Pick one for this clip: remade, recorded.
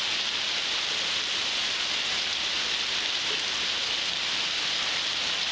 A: recorded